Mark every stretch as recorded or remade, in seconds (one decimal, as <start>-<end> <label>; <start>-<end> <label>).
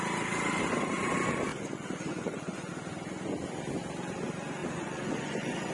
0.0-1.5 recorded; 1.5-2.7 remade; 2.7-4.6 recorded; 4.6-5.7 remade